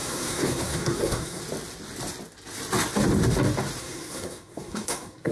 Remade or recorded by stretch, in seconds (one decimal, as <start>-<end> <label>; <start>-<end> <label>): 0.0-1.4 remade; 1.4-3.8 recorded; 3.8-5.3 remade